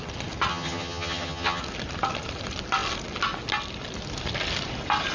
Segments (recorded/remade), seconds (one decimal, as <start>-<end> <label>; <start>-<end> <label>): 0.0-0.5 recorded; 0.5-1.6 remade; 1.6-5.1 recorded